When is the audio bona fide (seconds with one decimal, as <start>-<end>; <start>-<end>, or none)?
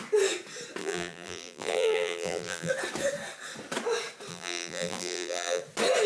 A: 0.0-0.8; 2.7-4.3; 5.6-6.1